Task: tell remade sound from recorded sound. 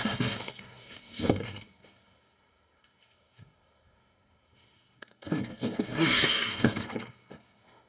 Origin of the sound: remade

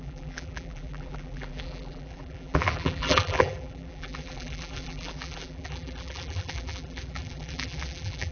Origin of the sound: remade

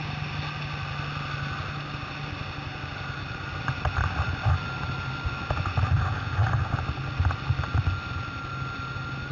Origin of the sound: recorded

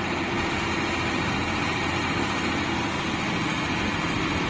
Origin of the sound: recorded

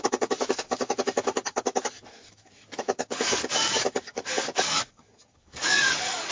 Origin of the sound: remade